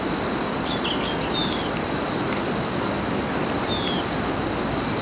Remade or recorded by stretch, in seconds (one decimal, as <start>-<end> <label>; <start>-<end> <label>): 0.0-5.0 recorded